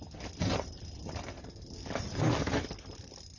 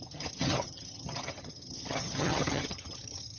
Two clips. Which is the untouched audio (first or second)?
first